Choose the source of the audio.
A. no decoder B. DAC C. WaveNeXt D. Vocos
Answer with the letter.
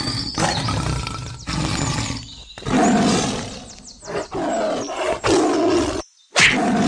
A